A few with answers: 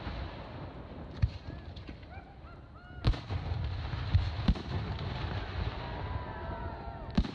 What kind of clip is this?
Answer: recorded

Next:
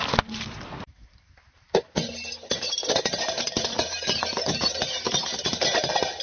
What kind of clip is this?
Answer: recorded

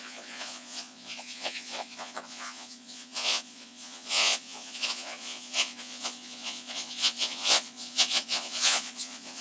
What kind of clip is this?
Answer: remade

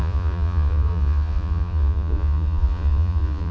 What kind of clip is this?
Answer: remade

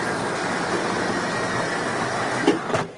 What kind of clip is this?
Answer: recorded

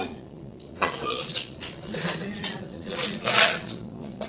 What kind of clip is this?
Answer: remade